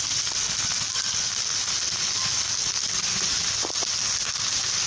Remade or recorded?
recorded